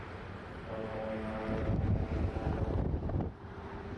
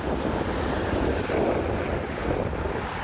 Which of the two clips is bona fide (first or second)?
second